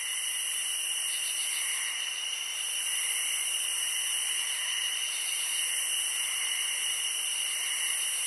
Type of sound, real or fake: fake